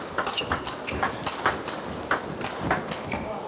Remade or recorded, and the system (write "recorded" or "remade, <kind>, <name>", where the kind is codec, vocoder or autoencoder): recorded